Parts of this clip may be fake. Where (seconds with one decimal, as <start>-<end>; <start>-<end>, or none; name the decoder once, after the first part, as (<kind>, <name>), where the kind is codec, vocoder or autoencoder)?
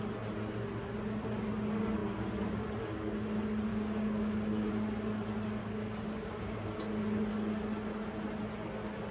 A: 3.7-4.7 (codec, DAC); 5.6-6.5